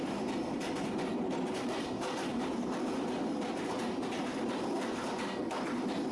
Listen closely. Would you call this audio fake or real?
real